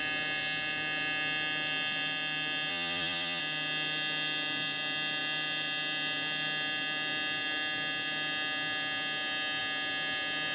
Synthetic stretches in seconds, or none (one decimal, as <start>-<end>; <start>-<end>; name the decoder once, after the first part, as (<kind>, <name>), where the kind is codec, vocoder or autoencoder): 2.7-3.4 (vocoder, Vocos)